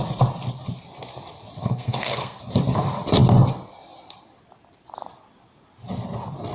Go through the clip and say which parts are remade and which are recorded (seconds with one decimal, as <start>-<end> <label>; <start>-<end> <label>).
0.0-1.6 recorded; 1.6-2.4 remade; 2.4-6.5 recorded